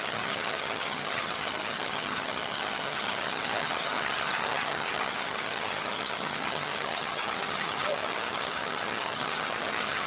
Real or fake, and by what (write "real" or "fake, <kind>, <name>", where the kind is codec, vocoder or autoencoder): fake, vocoder, HiFi-GAN